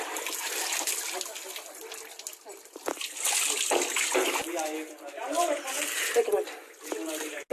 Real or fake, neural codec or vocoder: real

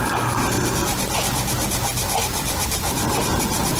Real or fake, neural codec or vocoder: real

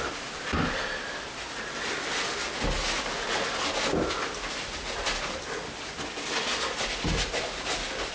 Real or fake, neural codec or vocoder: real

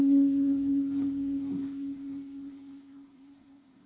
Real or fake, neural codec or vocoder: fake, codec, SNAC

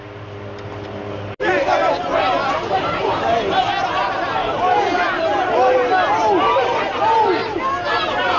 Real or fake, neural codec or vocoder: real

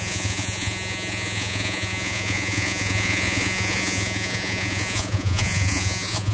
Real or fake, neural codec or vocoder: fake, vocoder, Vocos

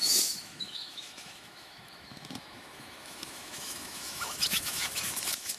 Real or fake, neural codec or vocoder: fake, autoencoder, DAC-VAE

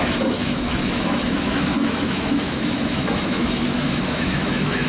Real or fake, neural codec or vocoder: fake, autoencoder, DAC-VAE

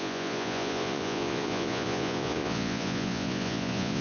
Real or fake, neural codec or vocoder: fake, vocoder, Vocos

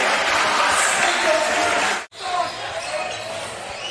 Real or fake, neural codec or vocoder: real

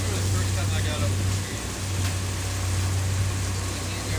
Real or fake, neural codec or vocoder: real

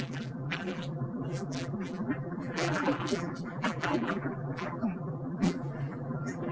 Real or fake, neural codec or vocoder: fake, vocoder, BigVGAN v2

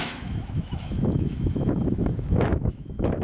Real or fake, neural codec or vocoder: fake, autoencoder, DAC-VAE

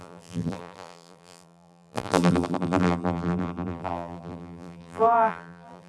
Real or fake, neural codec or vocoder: fake, vocoder, BigVGAN v2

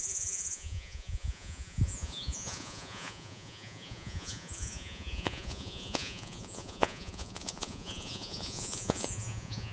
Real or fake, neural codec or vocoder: fake, vocoder, Vocos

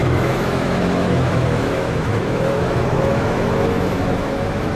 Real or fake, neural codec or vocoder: fake, autoencoder, DAC-VAE